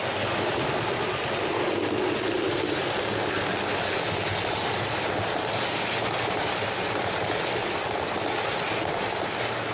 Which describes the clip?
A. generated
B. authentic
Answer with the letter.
B